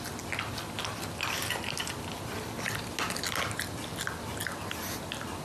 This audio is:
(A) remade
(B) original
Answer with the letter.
B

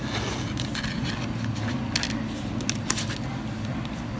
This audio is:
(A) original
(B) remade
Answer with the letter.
A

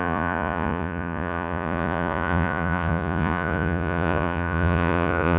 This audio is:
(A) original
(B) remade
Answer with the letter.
B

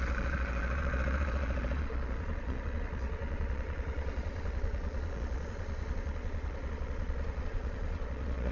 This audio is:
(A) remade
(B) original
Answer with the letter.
A